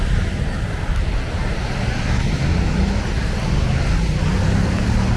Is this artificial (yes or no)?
no